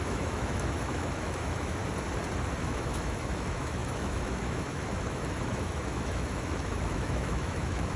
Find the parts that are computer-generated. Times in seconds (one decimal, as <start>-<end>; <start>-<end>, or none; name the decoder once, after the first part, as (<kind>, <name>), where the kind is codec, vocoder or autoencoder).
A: 0.0-1.8 (autoencoder, DAC-VAE); 2.6-8.0